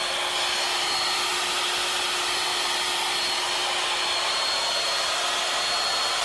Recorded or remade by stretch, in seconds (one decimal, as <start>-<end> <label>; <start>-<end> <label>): 0.0-6.2 recorded